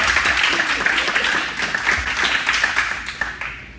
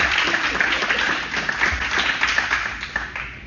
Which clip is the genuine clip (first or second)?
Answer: first